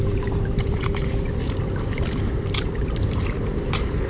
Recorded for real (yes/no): no